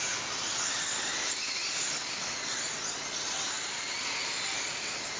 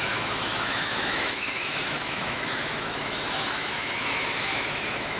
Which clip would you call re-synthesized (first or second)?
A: second